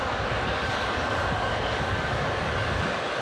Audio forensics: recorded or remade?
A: remade